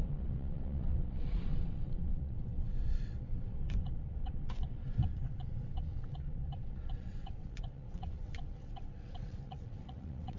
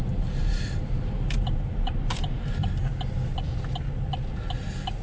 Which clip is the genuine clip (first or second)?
second